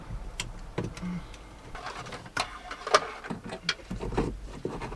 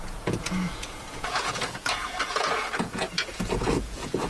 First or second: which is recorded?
first